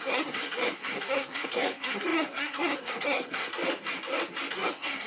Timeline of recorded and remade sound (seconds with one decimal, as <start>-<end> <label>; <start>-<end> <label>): 0.0-3.5 remade; 3.5-4.5 recorded; 4.5-5.1 remade